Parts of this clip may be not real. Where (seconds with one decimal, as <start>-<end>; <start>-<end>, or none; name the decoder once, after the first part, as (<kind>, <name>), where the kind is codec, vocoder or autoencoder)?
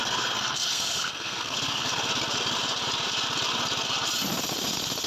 0.0-2.0 (codec, SNAC)